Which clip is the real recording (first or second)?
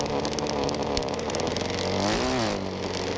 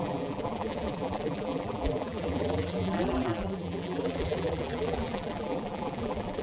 first